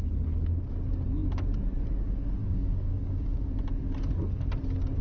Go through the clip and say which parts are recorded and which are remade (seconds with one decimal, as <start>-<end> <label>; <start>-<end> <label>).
0.0-2.4 recorded; 2.4-3.5 remade; 3.5-5.0 recorded